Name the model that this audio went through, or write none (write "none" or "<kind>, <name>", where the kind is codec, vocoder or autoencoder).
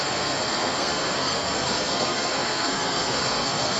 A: codec, SNAC